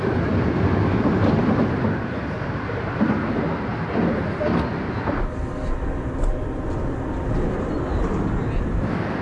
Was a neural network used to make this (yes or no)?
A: no